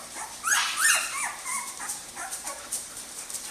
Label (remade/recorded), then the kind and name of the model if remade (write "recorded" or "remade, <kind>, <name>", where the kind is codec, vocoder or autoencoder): remade, vocoder, BigVGAN v2